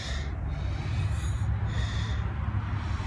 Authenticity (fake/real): real